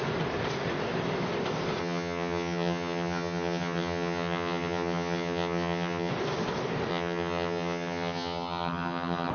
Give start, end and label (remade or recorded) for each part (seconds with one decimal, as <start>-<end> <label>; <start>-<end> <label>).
0.0-1.8 recorded; 1.8-6.1 remade; 6.1-6.9 recorded; 6.9-9.3 remade